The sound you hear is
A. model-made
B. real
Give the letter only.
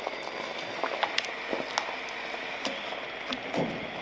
B